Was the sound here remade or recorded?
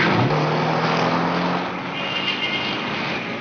recorded